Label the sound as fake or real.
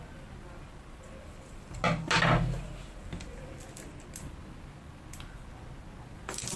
real